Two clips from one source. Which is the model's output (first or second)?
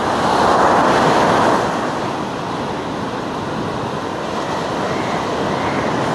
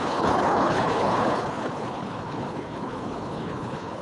second